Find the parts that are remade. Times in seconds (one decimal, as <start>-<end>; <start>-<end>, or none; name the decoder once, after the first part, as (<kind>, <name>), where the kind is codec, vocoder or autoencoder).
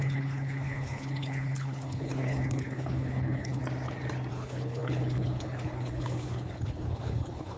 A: 0.0-3.6 (codec, HILCodec); 4.3-7.6